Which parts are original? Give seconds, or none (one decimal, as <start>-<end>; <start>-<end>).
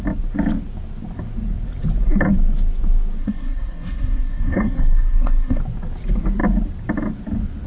0.0-3.2; 5.6-7.7